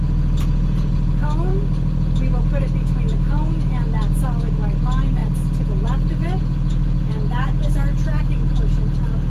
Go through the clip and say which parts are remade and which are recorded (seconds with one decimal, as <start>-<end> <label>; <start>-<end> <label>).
0.0-9.3 recorded